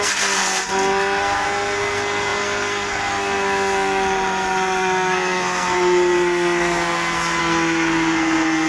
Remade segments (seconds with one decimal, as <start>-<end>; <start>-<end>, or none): 0.0-8.7